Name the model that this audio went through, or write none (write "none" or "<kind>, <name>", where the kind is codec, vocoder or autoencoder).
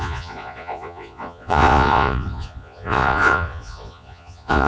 vocoder, Vocos